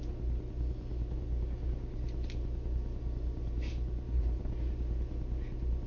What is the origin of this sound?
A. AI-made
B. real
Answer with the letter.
B